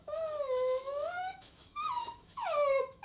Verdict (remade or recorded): remade